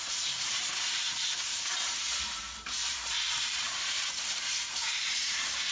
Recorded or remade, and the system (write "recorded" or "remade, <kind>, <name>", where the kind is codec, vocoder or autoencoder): remade, vocoder, BigVGAN v2